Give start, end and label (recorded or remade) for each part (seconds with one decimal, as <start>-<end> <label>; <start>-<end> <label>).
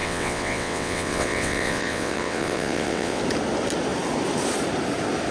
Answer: 0.0-3.2 remade; 3.2-5.3 recorded